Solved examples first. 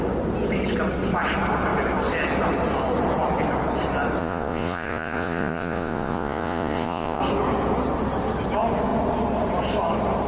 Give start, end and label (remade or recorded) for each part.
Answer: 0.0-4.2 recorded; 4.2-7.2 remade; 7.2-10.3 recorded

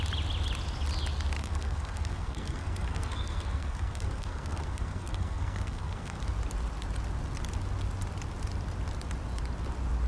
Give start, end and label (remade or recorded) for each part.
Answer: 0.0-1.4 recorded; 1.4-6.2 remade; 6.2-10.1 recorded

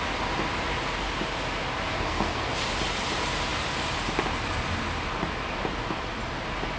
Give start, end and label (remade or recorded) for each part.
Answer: 0.0-1.9 recorded; 1.9-2.5 remade; 2.5-6.8 recorded

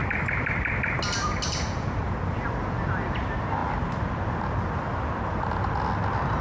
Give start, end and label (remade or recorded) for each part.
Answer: 0.0-6.4 recorded

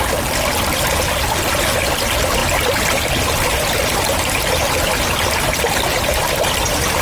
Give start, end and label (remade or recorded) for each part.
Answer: 0.0-7.0 recorded

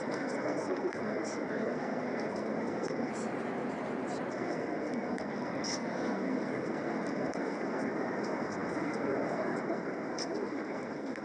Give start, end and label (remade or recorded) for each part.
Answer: 0.0-3.1 remade; 3.1-4.3 recorded; 4.3-11.2 remade